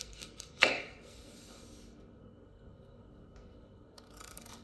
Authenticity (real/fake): fake